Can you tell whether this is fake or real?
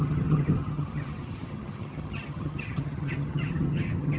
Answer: fake